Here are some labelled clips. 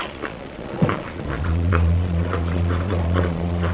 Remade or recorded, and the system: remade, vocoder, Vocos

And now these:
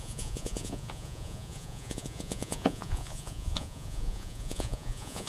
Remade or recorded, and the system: remade, vocoder, Vocos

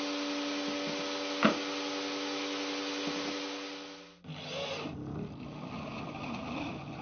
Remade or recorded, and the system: recorded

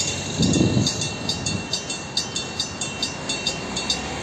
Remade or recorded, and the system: recorded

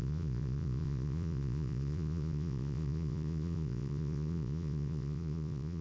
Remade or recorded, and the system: remade, vocoder, Vocos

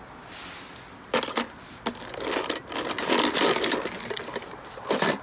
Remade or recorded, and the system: recorded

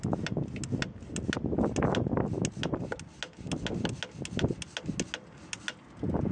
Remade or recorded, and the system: recorded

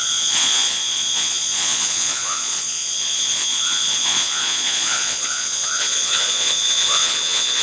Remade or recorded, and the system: remade, vocoder, Vocos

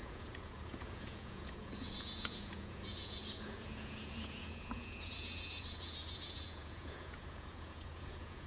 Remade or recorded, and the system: remade, vocoder, Vocos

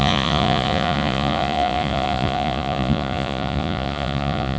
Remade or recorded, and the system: remade, vocoder, Vocos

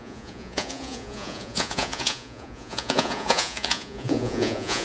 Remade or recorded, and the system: remade, vocoder, Vocos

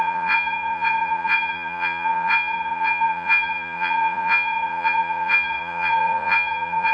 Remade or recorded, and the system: remade, vocoder, Vocos